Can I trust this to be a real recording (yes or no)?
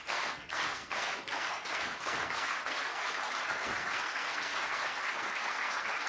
no